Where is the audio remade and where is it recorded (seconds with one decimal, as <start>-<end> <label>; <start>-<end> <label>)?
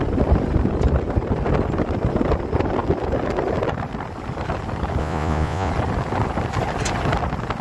0.0-5.0 recorded; 5.0-5.7 remade; 5.7-7.6 recorded